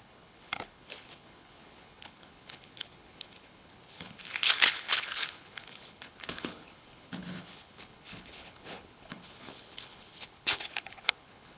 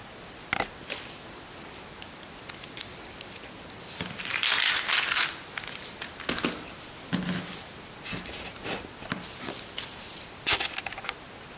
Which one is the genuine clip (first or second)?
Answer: second